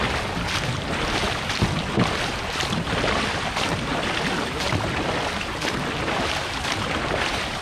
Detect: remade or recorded recorded